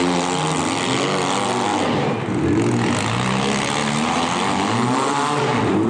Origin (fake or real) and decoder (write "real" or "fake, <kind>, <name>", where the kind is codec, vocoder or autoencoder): real